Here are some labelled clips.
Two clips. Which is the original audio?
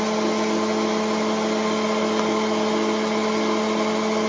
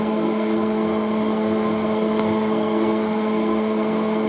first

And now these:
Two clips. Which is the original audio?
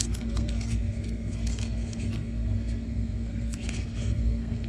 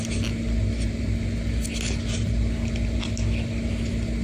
second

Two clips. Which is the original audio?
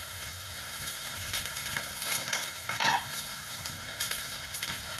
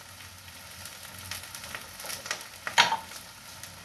second